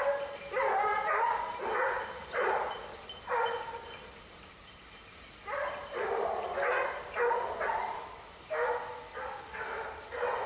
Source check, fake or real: real